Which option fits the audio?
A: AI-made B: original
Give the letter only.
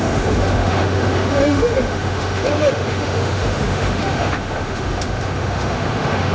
A